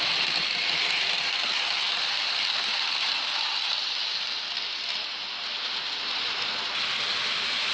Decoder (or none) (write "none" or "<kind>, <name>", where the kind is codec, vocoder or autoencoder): none